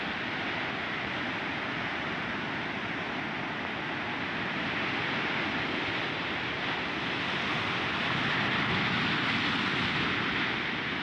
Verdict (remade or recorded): recorded